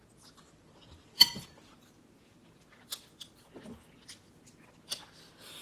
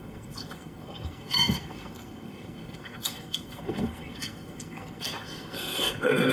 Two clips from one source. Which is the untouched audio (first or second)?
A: first